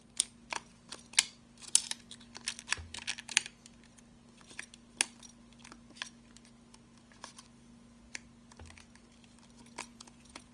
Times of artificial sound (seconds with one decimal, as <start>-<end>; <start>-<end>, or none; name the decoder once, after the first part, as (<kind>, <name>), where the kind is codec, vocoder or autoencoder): 9.9-10.5 (vocoder, Vocos)